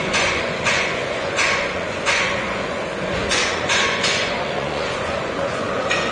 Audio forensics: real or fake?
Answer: fake